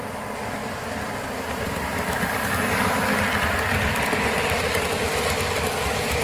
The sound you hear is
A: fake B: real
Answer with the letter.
B